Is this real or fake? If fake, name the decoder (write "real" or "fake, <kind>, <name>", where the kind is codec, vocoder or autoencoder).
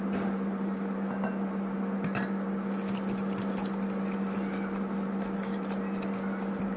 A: real